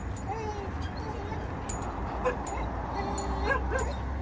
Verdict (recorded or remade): recorded